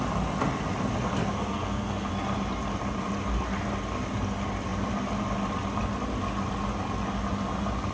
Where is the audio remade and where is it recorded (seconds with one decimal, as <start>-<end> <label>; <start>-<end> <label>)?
0.0-1.2 recorded; 1.2-2.1 remade; 2.1-7.9 recorded